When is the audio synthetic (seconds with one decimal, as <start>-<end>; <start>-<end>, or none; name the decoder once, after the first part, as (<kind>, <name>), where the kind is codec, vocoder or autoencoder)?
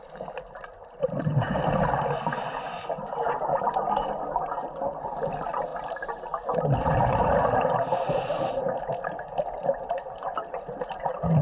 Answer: none